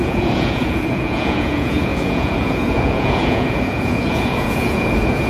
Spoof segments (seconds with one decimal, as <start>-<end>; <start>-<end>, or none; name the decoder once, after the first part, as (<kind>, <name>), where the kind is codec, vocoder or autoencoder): 0.0-5.3 (vocoder, Vocos)